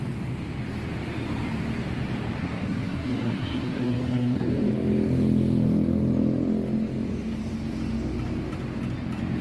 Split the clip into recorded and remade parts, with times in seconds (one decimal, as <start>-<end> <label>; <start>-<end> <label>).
0.0-2.4 recorded; 2.4-4.5 remade; 4.5-9.4 recorded